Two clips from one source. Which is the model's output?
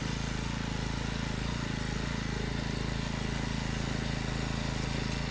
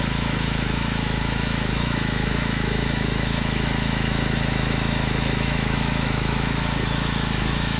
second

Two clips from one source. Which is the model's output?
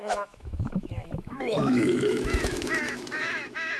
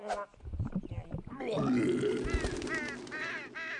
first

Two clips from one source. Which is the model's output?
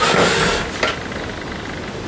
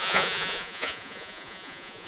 second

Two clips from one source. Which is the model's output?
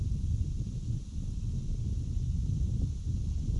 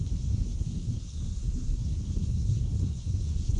second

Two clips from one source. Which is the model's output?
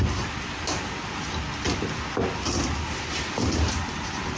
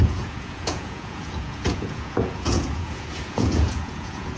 second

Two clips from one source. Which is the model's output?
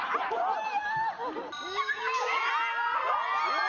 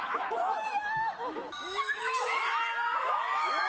second